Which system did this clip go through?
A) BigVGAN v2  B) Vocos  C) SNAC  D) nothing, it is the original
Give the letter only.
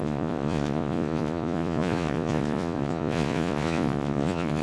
B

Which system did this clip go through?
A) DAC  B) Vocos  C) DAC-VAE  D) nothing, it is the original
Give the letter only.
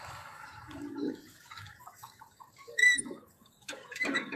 A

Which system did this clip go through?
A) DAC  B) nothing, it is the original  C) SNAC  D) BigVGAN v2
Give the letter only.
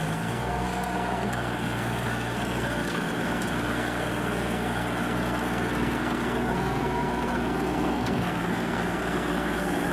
C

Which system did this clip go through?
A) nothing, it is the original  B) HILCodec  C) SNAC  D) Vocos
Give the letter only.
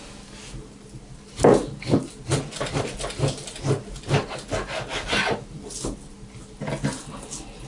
A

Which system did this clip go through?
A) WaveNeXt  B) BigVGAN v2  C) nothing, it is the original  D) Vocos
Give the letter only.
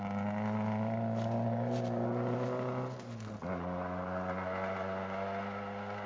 C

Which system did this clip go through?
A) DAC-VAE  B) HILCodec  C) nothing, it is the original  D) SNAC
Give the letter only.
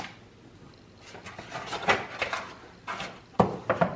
C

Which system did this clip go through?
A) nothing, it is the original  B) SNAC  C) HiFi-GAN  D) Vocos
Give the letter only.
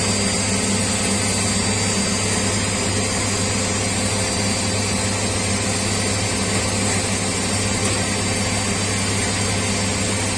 A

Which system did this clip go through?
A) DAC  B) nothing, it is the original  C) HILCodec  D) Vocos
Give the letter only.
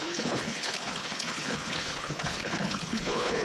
C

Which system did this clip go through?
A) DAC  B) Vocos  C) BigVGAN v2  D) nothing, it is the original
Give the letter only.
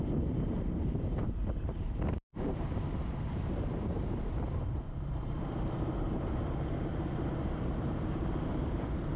C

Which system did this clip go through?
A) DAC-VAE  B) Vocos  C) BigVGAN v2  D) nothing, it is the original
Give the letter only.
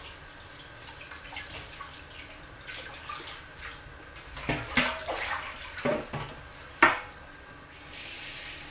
D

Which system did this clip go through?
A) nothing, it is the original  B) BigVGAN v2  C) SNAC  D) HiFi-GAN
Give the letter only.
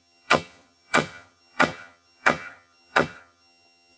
D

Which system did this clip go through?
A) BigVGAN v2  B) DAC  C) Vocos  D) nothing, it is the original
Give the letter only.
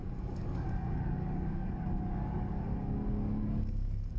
B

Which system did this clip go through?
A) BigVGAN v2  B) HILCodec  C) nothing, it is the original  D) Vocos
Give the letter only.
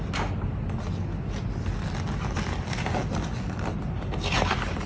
C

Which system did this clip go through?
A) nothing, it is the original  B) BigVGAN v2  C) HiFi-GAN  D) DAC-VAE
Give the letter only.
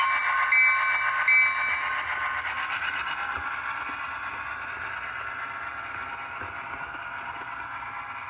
A